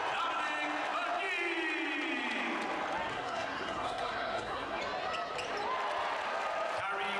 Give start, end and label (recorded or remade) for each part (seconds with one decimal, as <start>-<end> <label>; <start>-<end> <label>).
0.0-3.1 recorded; 3.1-4.8 remade; 4.8-7.2 recorded